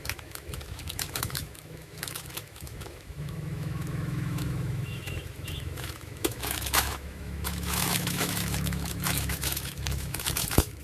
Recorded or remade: remade